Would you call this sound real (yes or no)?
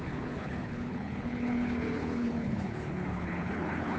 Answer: no